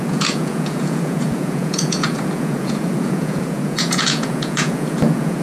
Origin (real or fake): fake